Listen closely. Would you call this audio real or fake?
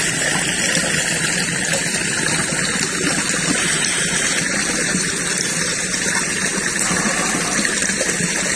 real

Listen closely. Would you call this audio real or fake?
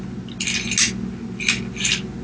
real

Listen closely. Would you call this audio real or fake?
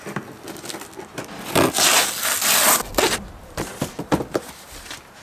real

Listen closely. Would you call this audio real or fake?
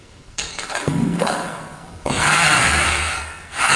fake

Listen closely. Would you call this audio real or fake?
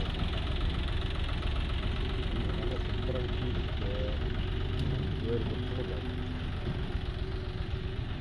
real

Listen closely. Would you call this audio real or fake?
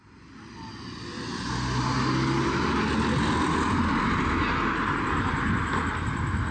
real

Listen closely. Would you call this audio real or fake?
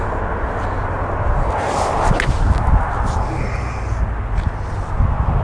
real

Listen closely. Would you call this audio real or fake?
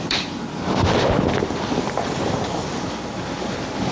fake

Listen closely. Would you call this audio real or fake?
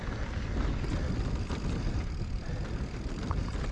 real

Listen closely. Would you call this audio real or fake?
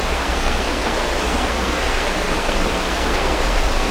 fake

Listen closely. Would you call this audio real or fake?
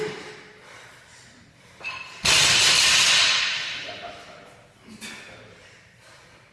real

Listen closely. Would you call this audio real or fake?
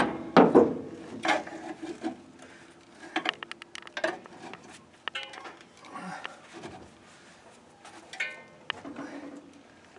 real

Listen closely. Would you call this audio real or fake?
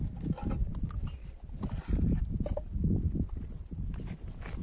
real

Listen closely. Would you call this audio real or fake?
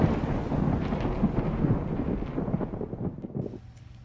real